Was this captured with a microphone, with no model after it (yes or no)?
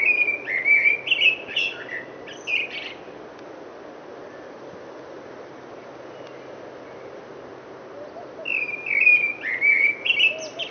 yes